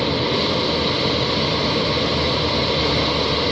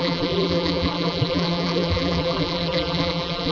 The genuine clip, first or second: first